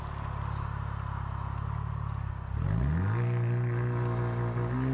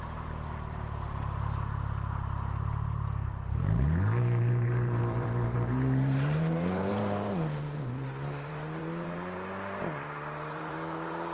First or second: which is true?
first